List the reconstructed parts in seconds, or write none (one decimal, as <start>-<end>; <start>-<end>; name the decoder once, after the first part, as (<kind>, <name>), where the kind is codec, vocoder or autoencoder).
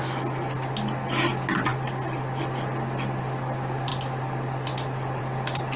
none